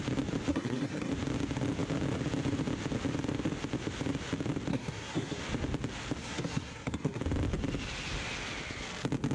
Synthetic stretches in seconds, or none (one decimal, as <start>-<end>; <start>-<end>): 0.5-1.1; 4.7-5.4; 6.2-7.2